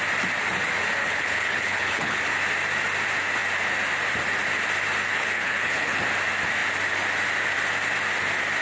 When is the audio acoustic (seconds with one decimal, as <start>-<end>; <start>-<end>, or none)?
0.0-1.0; 2.2-5.1; 6.0-8.6